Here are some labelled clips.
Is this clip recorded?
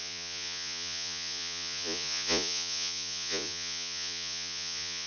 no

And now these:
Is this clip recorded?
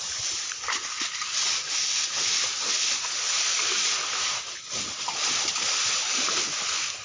yes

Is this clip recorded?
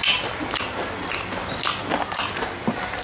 yes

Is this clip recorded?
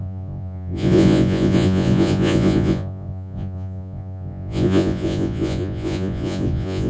no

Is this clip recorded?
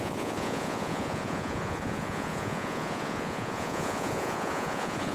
no